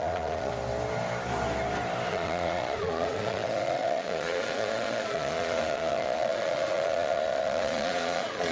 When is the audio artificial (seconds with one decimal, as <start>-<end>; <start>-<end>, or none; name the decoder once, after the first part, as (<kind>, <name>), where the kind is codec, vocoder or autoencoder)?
0.0-0.5 (vocoder, Vocos); 2.1-8.5